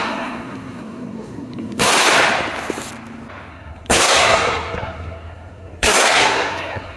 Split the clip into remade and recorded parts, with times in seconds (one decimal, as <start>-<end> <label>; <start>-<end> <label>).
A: 0.0-1.9 remade; 1.9-3.5 recorded; 3.5-7.0 remade

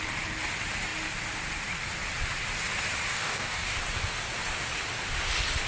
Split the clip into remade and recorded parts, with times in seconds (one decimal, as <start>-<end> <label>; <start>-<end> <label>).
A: 0.0-3.1 recorded; 3.1-3.8 remade; 3.8-5.7 recorded